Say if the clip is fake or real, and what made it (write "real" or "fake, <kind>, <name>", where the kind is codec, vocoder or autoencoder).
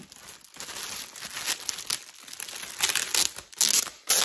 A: real